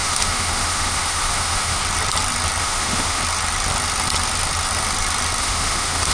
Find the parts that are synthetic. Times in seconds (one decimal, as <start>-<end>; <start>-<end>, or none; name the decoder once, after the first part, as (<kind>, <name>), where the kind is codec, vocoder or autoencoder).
0.0-1.8 (autoencoder, DAC-VAE); 2.6-3.2; 5.4-6.1